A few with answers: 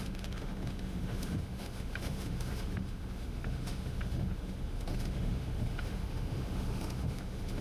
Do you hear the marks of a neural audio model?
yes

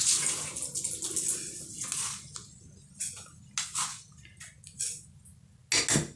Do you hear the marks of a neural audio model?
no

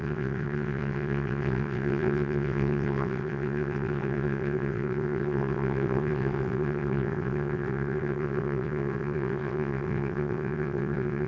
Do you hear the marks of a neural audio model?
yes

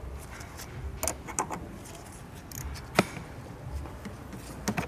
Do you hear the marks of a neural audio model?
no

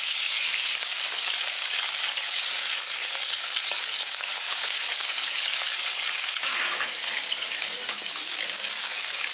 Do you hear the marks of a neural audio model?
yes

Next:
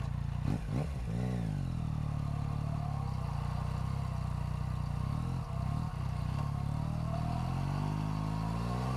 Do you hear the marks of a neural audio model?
no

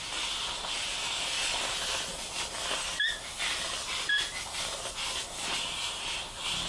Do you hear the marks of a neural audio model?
no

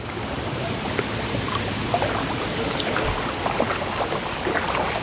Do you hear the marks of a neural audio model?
no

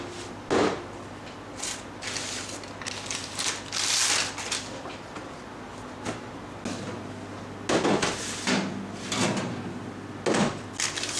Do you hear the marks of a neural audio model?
no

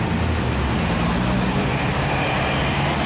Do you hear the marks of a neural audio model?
no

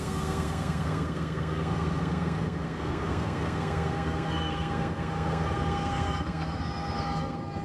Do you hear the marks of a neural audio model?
yes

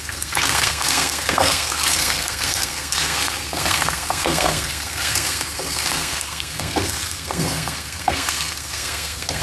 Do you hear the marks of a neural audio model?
yes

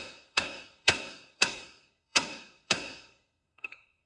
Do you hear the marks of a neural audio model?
yes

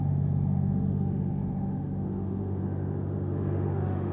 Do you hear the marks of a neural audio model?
yes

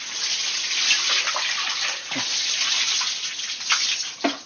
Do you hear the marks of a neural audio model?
no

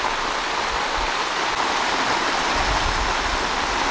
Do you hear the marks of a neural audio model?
no